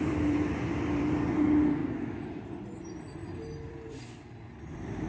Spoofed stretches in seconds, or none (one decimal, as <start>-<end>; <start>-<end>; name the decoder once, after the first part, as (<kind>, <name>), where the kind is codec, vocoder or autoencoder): 0.0-1.8 (vocoder, BigVGAN v2); 2.8-3.2; 3.7-5.1